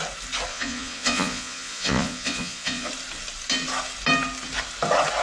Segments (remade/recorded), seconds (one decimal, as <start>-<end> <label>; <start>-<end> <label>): 0.0-0.5 recorded; 0.5-2.9 remade; 2.9-5.2 recorded